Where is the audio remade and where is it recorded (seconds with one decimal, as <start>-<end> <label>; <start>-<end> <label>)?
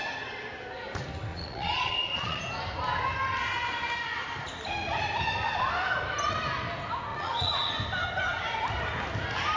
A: 0.0-1.3 recorded; 1.3-2.4 remade; 2.4-7.1 recorded; 7.1-7.7 remade; 7.7-9.6 recorded